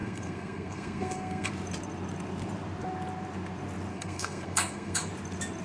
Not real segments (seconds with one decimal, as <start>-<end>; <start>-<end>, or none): 0.0-1.5; 3.9-5.1